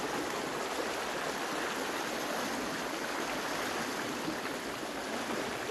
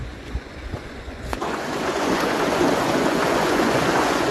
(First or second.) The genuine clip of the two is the first